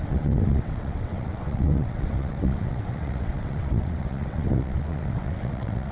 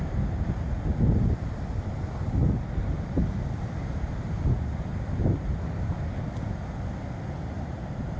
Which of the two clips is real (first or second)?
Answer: second